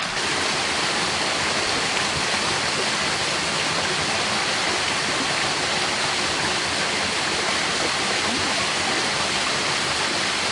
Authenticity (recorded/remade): recorded